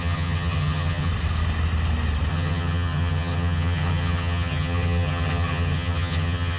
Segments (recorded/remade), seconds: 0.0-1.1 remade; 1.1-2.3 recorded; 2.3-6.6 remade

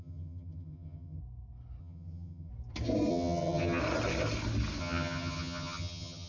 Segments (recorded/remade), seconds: 0.0-1.2 remade; 1.2-1.8 recorded; 1.8-2.5 remade; 2.5-3.1 recorded; 3.1-3.8 remade; 3.8-4.8 recorded; 4.8-6.3 remade

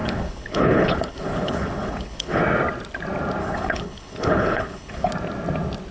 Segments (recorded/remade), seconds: 0.0-2.4 remade; 2.4-3.4 recorded; 3.4-5.1 remade; 5.1-5.9 recorded

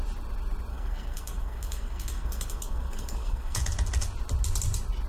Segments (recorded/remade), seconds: 0.0-0.7 recorded; 0.7-3.6 remade; 3.6-5.1 recorded

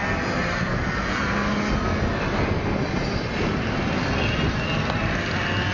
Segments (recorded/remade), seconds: 0.0-5.7 recorded

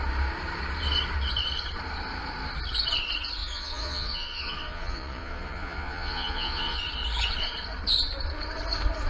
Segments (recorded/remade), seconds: 0.0-3.4 recorded; 3.4-6.8 remade; 6.8-9.1 recorded